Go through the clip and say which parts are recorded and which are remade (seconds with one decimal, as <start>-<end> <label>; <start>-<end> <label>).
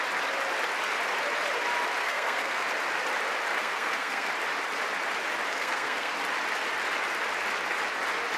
0.0-2.0 recorded; 2.0-2.7 remade; 2.7-3.6 recorded; 3.6-4.3 remade; 4.3-5.5 recorded; 5.5-6.1 remade; 6.1-8.4 recorded